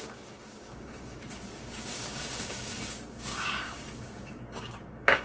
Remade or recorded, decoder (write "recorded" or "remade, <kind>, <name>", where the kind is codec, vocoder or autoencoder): remade, codec, DAC